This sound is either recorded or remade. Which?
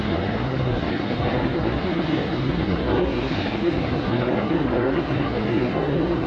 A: remade